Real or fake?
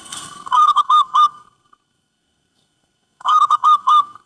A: fake